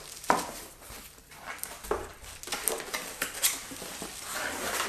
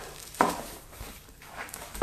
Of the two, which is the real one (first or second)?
first